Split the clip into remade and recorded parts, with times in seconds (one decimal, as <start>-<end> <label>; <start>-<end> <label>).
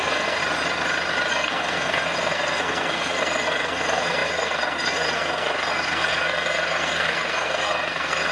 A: 0.0-0.4 remade; 0.4-1.3 recorded; 1.3-8.3 remade